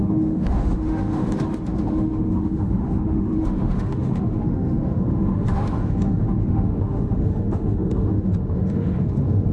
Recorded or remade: remade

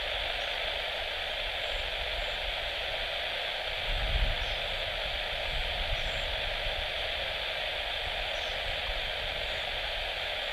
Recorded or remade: recorded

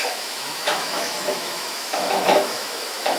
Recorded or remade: remade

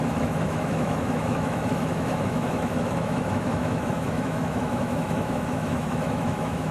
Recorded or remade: remade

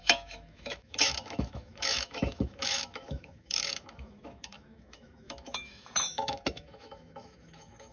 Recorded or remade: remade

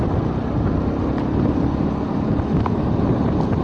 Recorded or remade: recorded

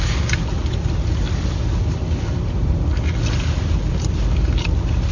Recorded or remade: recorded